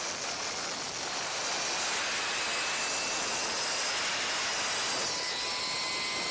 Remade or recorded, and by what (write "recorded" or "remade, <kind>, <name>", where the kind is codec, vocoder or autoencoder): recorded